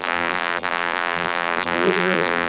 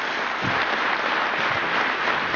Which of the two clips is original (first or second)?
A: second